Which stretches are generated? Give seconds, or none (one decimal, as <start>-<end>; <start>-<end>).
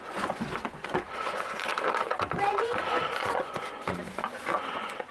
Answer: 0.0-1.7; 2.5-5.1